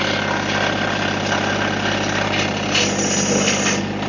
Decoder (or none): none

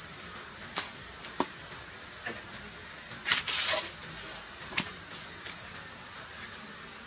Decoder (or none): none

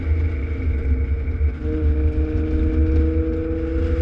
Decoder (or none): none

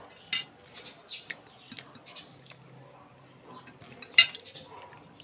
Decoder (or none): none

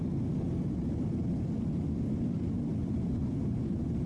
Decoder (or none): none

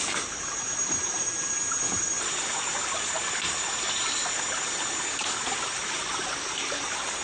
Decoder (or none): none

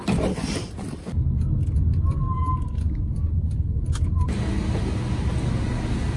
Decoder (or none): none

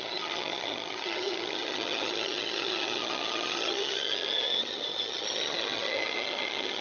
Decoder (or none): vocoder, HiFi-GAN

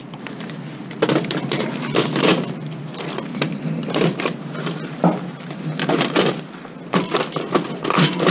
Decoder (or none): none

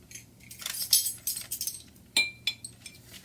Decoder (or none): none